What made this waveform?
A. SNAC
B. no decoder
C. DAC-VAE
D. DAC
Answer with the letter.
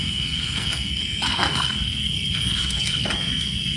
A